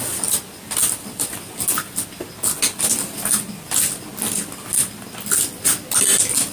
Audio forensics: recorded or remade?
recorded